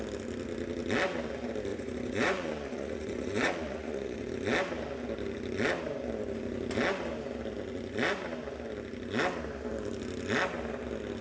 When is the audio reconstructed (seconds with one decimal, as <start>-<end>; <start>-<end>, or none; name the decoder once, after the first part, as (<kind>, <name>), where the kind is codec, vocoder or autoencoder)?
1.7-4.3 (vocoder, Vocos)